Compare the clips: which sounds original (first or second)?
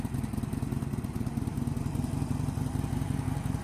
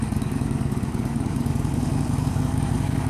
first